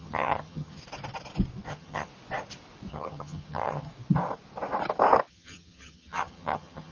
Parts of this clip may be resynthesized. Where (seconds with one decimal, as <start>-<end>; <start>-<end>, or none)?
0.0-0.8; 1.7-2.1; 2.9-3.9; 5.3-6.9